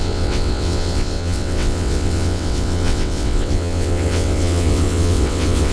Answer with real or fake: fake